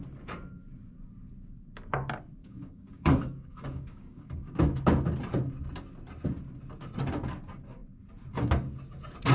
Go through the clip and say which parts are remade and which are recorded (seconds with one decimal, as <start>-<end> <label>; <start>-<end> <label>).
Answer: 0.0-2.4 recorded; 2.4-4.5 remade; 4.5-9.3 recorded